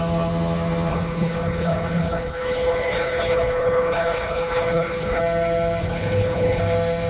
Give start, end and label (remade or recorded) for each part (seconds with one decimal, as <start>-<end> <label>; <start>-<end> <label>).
0.0-0.9 recorded; 0.9-5.2 remade; 5.2-5.8 recorded; 5.8-6.6 remade; 6.6-7.1 recorded